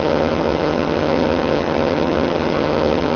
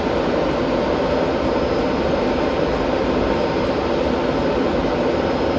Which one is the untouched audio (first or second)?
second